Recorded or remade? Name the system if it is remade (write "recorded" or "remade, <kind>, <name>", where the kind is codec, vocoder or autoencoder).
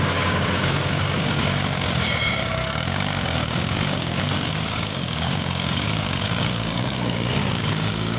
remade, codec, DAC